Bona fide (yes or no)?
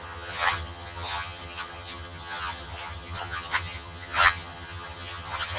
no